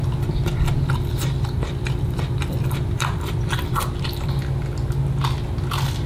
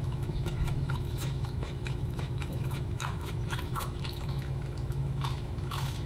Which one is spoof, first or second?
second